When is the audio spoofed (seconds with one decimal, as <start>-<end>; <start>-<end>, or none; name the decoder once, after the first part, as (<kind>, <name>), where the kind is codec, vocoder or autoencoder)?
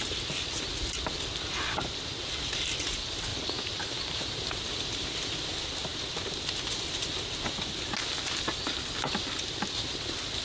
3.3-4.2 (vocoder, BigVGAN v2)